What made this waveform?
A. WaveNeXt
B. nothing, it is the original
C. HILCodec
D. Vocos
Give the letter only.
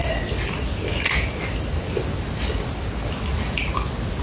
B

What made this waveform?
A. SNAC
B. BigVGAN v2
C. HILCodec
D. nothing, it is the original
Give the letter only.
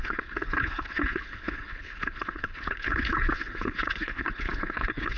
C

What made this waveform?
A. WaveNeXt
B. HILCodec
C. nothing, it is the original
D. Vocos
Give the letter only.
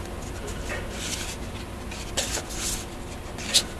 C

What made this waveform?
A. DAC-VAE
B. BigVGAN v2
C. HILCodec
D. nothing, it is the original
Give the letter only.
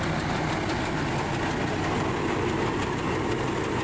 D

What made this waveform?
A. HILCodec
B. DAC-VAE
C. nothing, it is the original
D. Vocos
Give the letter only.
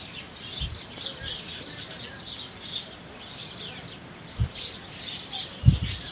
C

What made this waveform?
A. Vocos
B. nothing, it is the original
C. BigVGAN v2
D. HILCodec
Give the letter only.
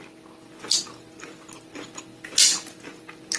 B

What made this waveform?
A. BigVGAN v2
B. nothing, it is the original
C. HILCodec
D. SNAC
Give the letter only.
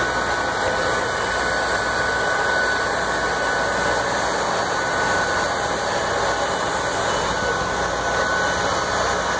B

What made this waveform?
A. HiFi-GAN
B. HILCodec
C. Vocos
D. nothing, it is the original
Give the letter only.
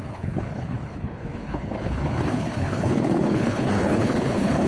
B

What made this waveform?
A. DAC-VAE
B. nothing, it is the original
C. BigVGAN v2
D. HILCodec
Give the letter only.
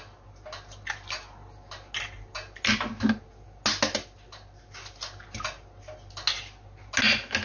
B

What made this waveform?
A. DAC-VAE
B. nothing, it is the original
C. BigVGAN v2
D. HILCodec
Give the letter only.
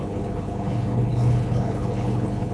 D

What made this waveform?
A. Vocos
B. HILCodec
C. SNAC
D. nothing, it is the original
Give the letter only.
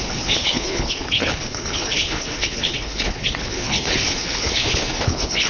B